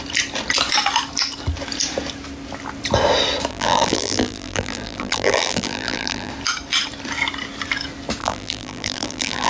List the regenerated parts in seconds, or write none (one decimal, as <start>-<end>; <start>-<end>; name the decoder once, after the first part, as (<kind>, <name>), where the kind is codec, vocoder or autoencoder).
3.5-6.3 (vocoder, BigVGAN v2); 8.2-9.5